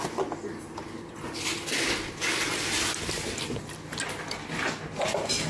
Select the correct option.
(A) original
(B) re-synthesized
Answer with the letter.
A